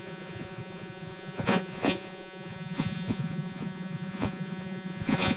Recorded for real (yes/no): no